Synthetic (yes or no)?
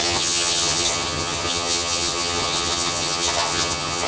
yes